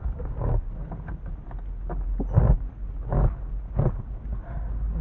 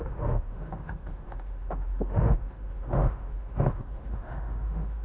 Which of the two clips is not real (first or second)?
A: second